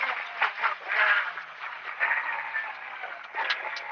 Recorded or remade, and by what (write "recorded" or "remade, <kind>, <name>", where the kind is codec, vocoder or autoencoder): recorded